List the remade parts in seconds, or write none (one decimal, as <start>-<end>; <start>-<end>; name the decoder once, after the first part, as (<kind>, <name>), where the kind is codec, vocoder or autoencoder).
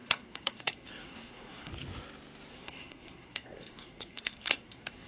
0.0-1.7 (codec, SNAC); 2.5-5.1